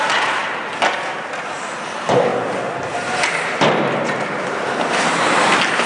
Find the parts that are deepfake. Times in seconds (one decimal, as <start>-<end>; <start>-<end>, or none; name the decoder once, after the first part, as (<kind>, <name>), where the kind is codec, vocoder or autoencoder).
none